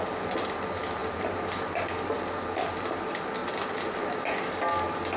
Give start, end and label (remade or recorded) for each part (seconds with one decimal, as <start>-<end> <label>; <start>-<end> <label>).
0.0-1.0 recorded; 1.0-2.2 remade; 2.2-3.4 recorded; 3.4-4.3 remade; 4.3-5.2 recorded